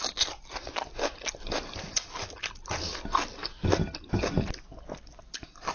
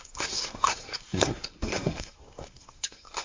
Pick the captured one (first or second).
first